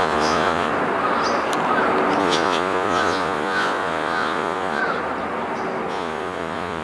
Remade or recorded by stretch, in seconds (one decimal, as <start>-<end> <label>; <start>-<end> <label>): 0.0-0.7 remade; 0.7-2.2 recorded; 2.2-4.8 remade; 4.8-5.9 recorded; 5.9-6.8 remade